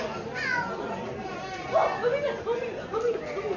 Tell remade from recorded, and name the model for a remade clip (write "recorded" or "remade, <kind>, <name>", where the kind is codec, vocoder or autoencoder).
recorded